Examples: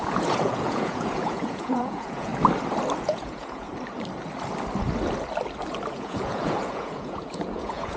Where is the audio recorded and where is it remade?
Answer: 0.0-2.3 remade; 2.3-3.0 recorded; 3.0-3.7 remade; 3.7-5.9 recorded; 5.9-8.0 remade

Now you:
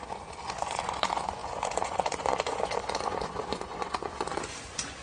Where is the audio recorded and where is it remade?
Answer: 0.0-5.0 remade

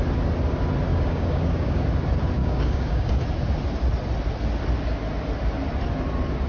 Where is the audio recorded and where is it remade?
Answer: 0.0-0.9 recorded; 0.9-1.8 remade; 1.8-2.4 recorded; 2.4-3.1 remade; 3.1-6.5 recorded

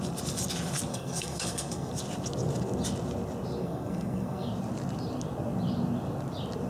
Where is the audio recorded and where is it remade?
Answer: 0.0-0.9 recorded; 0.9-1.9 remade; 1.9-3.6 recorded; 3.6-4.5 remade; 4.5-6.7 recorded

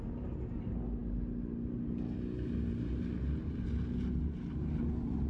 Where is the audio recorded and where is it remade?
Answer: 0.0-5.3 recorded

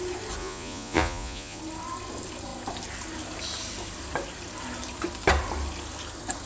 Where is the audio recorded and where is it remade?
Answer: 0.0-0.4 recorded; 0.4-1.6 remade; 1.6-6.5 recorded

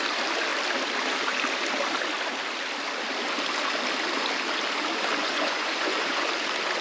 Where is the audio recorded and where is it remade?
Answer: 0.0-5.2 recorded; 5.2-6.3 remade; 6.3-6.8 recorded

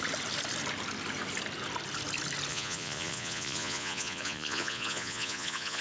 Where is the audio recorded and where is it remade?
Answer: 0.0-2.5 recorded; 2.5-5.8 remade